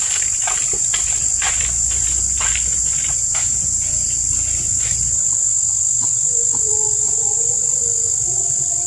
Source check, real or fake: fake